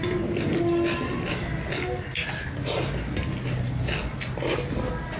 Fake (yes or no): no